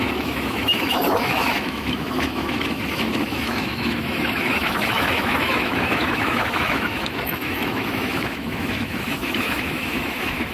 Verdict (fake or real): fake